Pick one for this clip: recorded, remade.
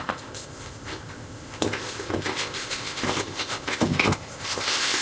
remade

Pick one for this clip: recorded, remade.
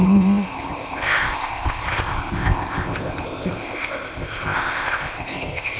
remade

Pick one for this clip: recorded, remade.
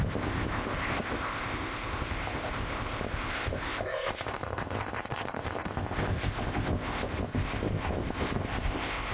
remade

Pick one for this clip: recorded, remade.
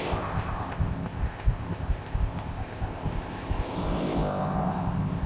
remade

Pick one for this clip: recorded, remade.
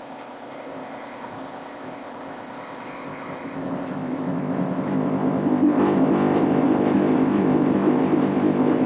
remade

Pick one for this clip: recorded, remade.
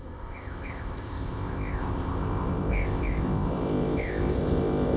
remade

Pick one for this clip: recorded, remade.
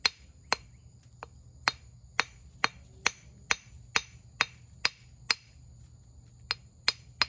recorded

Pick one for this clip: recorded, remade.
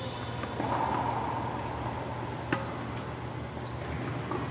recorded